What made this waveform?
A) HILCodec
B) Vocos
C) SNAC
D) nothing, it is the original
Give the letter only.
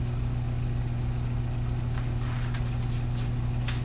D